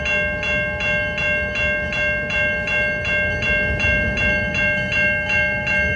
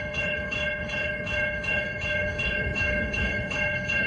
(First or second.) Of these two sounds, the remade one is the second